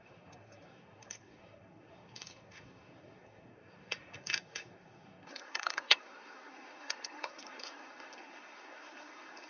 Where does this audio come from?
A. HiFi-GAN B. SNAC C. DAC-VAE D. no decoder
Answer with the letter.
B